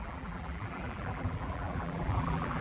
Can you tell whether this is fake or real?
fake